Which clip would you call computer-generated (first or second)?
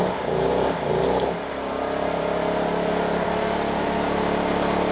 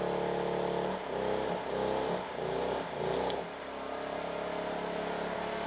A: first